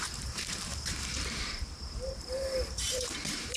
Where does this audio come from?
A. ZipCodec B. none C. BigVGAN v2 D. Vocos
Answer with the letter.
C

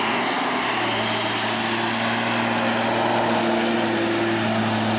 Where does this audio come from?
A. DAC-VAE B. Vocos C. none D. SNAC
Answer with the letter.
C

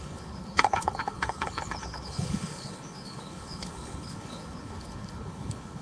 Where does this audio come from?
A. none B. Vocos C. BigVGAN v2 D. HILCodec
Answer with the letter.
D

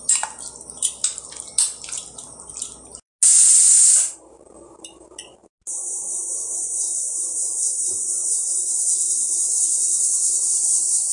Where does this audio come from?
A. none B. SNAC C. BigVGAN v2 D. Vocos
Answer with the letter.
A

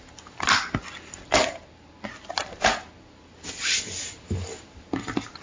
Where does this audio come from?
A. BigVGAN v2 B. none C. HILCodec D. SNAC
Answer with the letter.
B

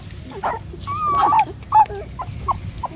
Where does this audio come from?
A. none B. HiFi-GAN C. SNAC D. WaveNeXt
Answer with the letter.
A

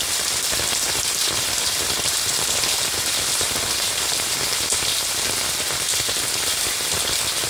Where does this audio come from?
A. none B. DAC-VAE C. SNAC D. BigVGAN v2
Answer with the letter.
A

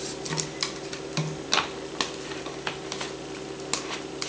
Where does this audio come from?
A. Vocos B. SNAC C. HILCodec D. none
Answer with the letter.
D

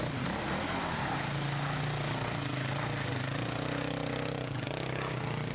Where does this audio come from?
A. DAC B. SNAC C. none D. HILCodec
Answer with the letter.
C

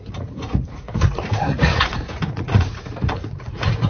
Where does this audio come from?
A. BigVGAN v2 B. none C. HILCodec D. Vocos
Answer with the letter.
D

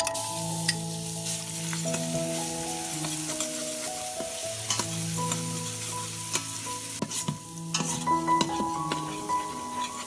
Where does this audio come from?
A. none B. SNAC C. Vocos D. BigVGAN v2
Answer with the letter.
A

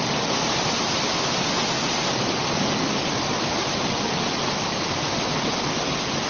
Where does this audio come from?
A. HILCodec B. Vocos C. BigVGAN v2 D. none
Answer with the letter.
D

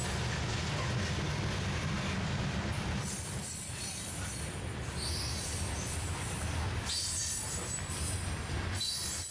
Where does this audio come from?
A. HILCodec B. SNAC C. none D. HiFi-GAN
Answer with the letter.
C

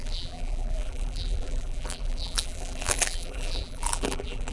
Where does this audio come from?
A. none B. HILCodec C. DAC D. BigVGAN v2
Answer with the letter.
D